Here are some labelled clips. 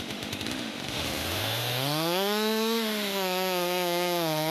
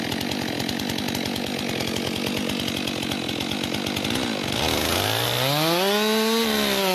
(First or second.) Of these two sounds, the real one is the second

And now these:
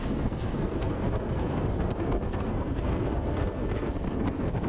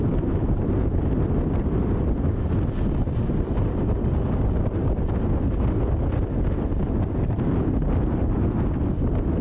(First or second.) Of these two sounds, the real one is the second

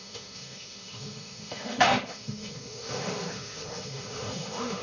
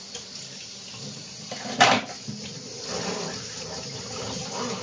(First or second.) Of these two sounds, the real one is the second